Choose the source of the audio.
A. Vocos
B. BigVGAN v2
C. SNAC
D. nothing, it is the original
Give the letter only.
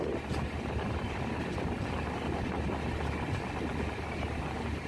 D